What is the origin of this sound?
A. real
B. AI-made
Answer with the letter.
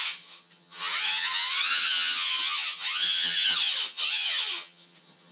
B